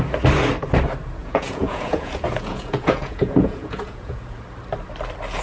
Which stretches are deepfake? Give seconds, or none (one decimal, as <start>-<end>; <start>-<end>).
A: 1.2-4.4